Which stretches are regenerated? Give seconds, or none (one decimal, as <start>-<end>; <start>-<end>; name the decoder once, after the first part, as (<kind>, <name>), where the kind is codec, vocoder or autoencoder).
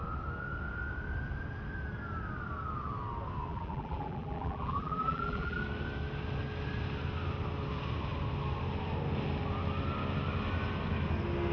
3.5-5.6 (vocoder, BigVGAN v2)